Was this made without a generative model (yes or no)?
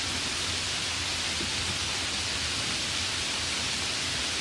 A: yes